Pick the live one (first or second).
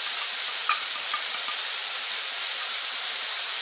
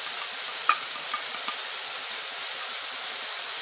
second